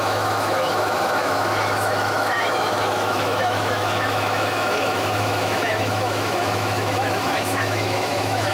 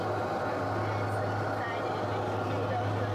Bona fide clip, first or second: second